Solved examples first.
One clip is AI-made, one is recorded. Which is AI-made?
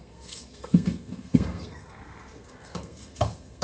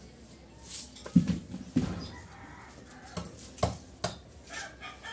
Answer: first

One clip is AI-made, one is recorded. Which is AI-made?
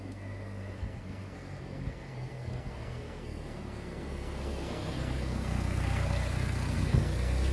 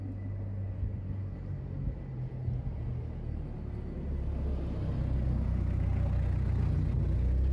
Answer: first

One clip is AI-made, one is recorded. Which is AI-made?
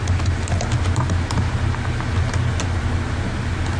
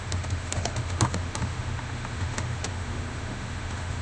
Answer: second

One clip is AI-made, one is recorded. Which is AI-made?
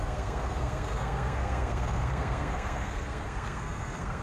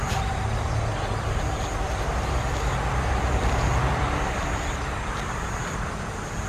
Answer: first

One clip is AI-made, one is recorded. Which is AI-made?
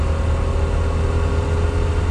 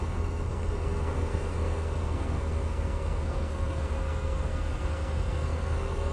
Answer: second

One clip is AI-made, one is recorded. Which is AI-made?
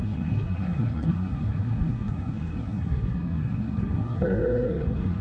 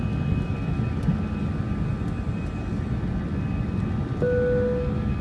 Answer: first